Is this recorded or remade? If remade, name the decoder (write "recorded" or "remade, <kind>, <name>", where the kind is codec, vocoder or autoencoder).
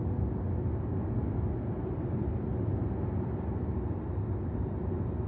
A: recorded